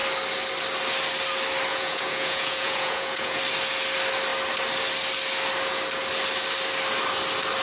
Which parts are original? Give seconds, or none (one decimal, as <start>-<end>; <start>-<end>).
0.0-1.7; 3.4-7.6